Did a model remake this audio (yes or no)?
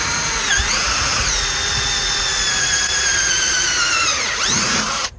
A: yes